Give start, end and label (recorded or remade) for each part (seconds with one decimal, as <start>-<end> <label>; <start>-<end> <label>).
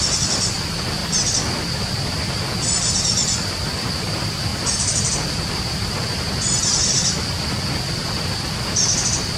0.0-9.4 remade